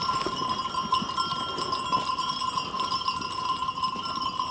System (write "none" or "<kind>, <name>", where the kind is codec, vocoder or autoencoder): none